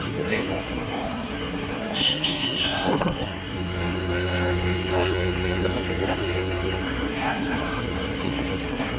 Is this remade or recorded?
remade